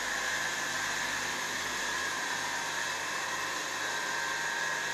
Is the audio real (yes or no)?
yes